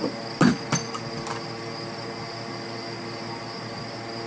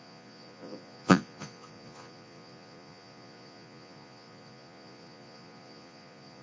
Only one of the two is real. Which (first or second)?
first